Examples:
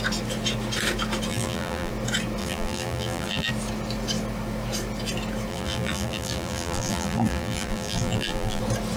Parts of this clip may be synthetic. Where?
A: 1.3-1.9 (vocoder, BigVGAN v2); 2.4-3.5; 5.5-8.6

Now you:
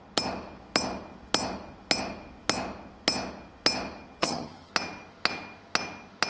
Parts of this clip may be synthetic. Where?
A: 4.2-4.7 (vocoder, HiFi-GAN)

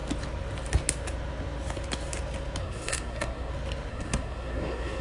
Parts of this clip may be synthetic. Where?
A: 2.6-3.5 (codec, SNAC); 3.9-5.0

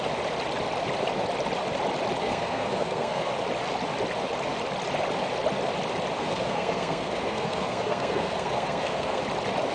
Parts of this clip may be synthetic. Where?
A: 2.2-3.3 (codec, SNAC); 6.2-9.2

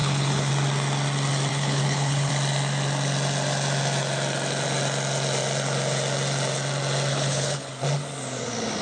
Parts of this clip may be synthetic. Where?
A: 0.0-0.5 (codec, HILCodec); 1.5-2.3; 7.1-7.7